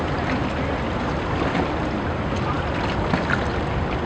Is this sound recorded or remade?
recorded